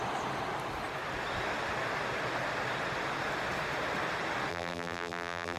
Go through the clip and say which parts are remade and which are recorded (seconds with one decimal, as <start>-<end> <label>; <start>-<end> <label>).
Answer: 0.0-4.5 recorded; 4.5-5.6 remade